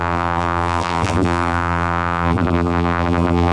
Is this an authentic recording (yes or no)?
no